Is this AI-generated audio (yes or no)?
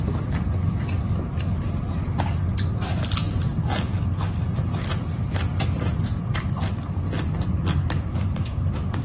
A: no